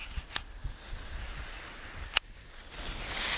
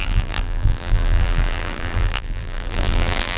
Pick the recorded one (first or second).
first